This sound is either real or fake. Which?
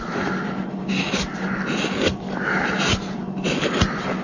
real